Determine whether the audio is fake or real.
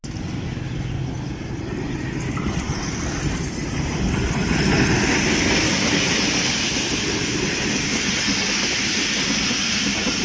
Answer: real